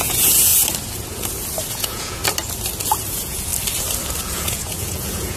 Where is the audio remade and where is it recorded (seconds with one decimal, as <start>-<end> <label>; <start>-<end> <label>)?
0.0-0.5 remade; 0.5-1.7 recorded; 1.7-2.2 remade; 2.2-3.1 recorded; 3.1-3.5 remade; 3.5-4.2 recorded; 4.2-5.4 remade